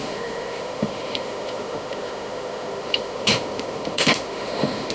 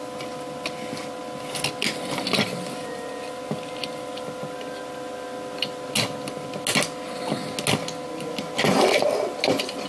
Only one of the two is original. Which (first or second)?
second